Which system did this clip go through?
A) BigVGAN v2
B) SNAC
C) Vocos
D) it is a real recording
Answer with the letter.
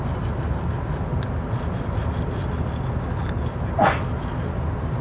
D